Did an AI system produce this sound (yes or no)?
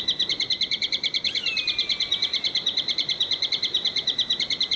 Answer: yes